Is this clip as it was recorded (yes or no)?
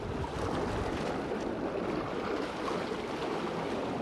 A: yes